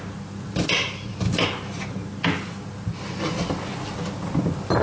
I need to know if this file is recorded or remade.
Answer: recorded